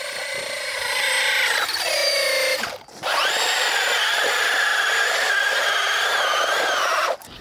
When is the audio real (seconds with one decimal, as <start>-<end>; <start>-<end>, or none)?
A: 0.0-2.0; 2.6-7.4